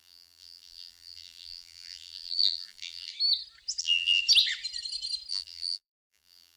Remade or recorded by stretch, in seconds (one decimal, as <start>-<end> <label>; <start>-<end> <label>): 0.0-3.1 remade; 3.1-3.8 recorded; 3.8-4.2 remade; 4.2-5.3 recorded; 5.3-6.6 remade